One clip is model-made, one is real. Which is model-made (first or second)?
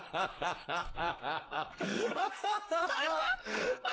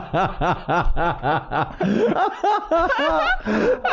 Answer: first